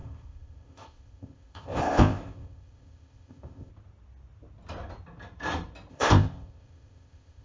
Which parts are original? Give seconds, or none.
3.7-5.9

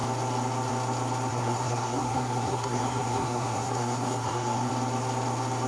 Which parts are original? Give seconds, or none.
0.0-1.3; 4.7-5.7

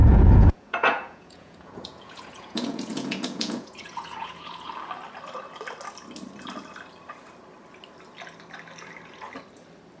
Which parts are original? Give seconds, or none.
4.7-10.0

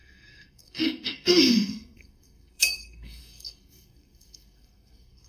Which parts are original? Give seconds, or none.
none

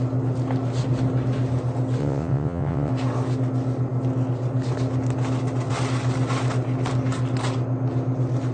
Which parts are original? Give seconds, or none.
0.0-2.0; 2.9-8.5